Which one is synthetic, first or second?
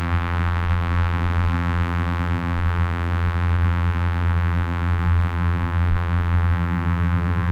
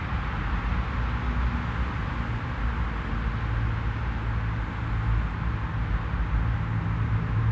first